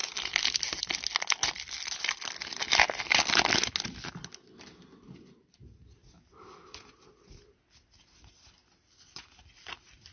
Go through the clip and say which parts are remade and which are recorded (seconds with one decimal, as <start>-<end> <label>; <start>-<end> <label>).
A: 0.0-10.1 recorded